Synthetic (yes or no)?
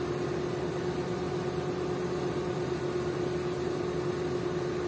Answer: no